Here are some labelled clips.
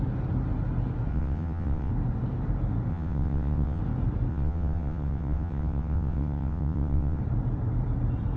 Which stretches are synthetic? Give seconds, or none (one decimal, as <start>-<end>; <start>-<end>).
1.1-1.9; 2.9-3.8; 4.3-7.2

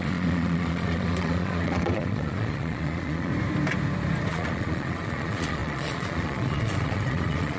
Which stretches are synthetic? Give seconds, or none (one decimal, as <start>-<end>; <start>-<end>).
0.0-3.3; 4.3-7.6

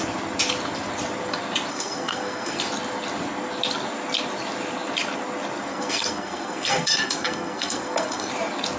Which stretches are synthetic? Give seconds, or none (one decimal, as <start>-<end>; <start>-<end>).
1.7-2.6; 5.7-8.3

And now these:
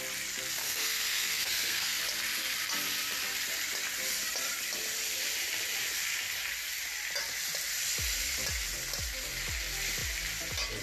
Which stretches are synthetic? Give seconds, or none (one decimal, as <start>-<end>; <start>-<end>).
0.6-2.0

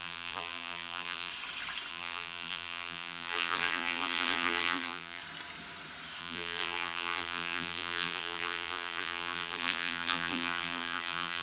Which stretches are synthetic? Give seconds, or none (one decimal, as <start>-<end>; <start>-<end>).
0.0-1.3; 1.9-5.2; 6.2-11.4